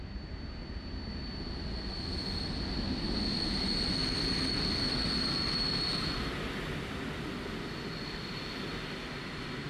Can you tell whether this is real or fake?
real